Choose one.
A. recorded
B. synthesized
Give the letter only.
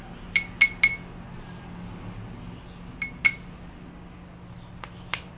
A